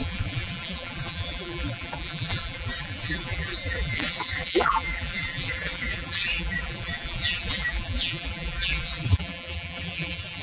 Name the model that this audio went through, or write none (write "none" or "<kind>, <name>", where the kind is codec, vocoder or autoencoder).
vocoder, BigVGAN v2